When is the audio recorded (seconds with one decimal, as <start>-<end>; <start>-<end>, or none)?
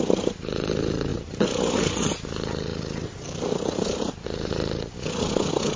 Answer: 0.0-1.1; 2.1-2.7; 4.7-5.8